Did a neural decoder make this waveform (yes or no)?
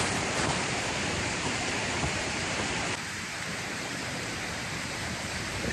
yes